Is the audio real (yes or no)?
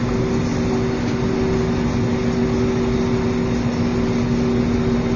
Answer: yes